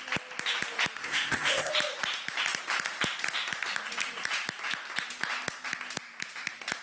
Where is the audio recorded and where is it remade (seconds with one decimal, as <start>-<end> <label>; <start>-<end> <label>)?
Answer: 0.0-1.0 recorded; 1.0-1.7 remade; 1.7-6.8 recorded